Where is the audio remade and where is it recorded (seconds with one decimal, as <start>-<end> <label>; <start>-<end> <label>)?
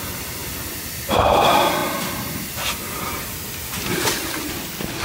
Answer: 0.0-5.0 recorded